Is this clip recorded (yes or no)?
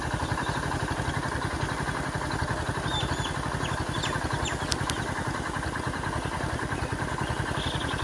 yes